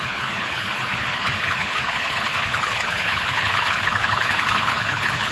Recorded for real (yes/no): no